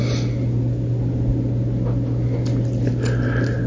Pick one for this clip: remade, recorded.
recorded